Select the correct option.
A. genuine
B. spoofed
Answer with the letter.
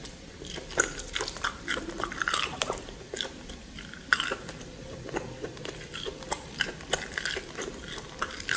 B